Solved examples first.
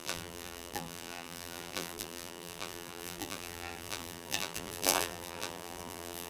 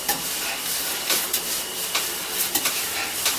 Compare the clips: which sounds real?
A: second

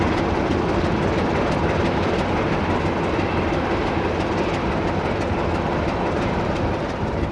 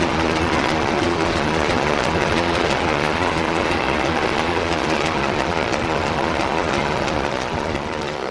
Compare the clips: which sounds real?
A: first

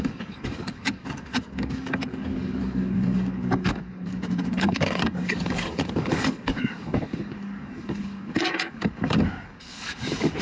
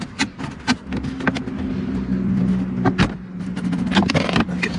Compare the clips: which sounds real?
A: second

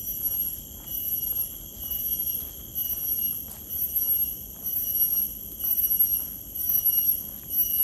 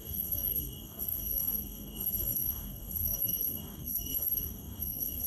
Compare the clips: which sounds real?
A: first